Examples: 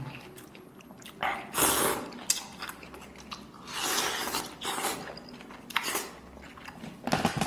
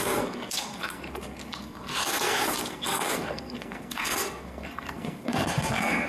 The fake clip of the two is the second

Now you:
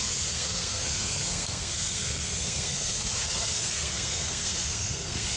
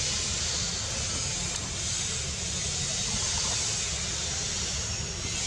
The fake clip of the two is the first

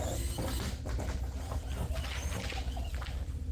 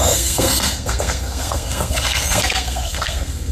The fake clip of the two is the second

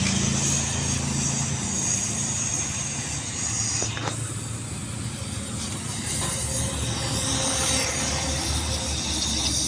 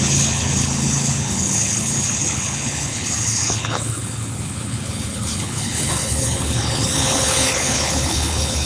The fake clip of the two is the second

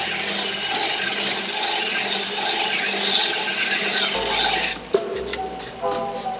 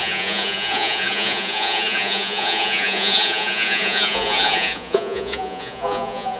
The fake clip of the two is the second